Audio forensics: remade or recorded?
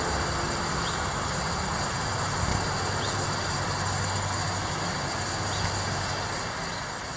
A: recorded